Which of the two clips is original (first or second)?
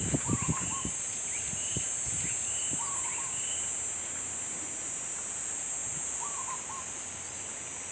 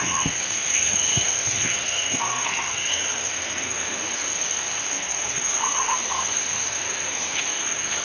first